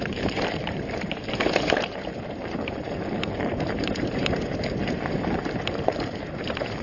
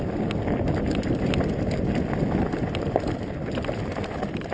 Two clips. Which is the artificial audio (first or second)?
first